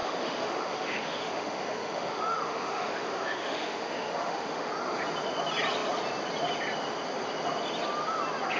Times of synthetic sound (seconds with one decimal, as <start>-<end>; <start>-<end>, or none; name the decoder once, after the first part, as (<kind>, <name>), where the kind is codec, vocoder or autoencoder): 0.0-4.7 (autoencoder, DAC-VAE)

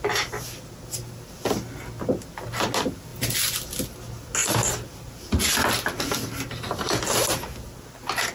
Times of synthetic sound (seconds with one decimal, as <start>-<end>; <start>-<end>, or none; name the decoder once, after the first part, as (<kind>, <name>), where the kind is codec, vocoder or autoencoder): 4.4-6.3 (vocoder, BigVGAN v2)

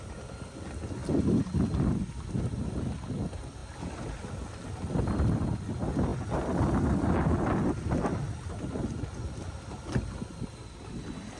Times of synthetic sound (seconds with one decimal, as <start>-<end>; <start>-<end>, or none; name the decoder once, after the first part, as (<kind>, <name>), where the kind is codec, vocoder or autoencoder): none

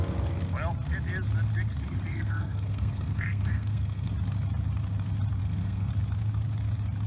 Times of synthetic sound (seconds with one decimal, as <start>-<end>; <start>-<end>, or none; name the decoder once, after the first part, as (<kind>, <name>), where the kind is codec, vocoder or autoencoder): 2.1-4.1 (codec, SNAC); 5.4-5.9

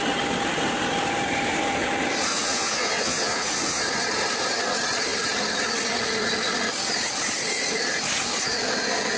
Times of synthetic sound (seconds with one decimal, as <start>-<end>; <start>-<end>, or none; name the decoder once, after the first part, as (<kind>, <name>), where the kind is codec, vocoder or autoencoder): 2.3-3.8 (vocoder, Vocos)

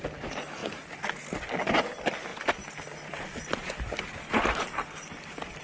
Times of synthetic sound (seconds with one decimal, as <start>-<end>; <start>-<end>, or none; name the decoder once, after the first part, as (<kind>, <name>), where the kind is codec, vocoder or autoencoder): none

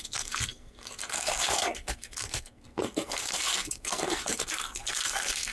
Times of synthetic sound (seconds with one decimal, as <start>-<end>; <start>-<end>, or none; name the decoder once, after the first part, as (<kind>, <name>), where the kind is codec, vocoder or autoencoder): 0.0-5.5 (codec, SNAC)

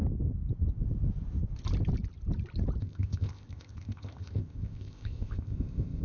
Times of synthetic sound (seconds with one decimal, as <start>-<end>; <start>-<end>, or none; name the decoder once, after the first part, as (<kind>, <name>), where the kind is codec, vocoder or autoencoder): 2.8-6.0 (codec, ZipCodec)